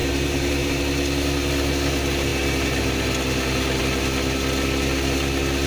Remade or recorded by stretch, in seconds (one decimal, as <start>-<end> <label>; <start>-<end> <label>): 0.0-0.8 remade; 0.8-5.7 recorded